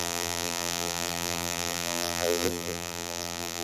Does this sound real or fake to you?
fake